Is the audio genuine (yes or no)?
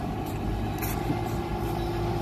yes